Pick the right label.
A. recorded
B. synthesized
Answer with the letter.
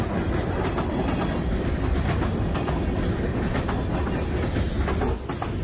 A